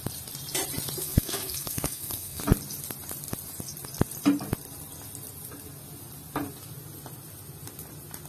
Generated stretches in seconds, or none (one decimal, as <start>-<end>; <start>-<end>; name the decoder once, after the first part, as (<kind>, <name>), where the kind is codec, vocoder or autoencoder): 1.0-2.4 (codec, SNAC)

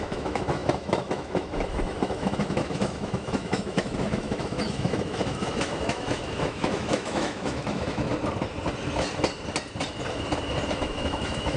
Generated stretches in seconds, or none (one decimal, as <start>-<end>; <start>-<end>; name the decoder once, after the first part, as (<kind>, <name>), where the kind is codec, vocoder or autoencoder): 0.0-8.1 (autoencoder, DAC-VAE); 10.7-11.6